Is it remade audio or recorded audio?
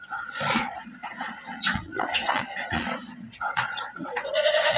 remade